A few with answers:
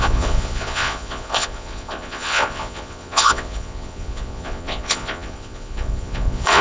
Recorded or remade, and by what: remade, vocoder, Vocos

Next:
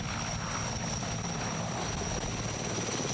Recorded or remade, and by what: recorded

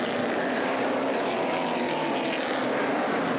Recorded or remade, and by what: recorded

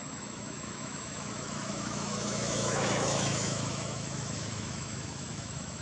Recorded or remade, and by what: remade, autoencoder, DAC-VAE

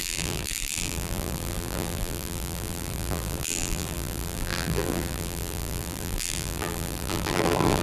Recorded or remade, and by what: remade, vocoder, BigVGAN v2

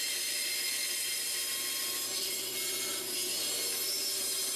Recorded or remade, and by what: recorded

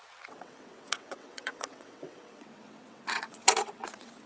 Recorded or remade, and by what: remade, vocoder, WaveNeXt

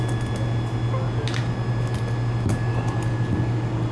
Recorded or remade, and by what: recorded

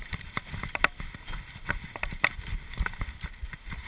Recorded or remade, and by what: recorded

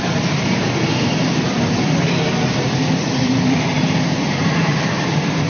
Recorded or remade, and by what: remade, vocoder, BigVGAN v2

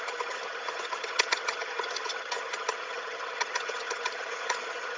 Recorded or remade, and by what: remade, vocoder, HiFi-GAN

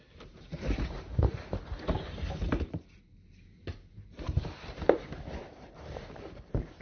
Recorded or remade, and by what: remade, vocoder, BigVGAN v2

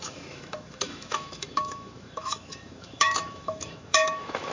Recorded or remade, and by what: remade, autoencoder, DAC-VAE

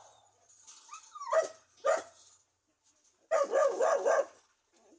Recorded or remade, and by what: recorded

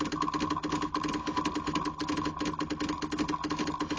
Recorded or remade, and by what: recorded